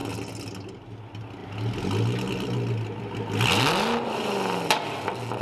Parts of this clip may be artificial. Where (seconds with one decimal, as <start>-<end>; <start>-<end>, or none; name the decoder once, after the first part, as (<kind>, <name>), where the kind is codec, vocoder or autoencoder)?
none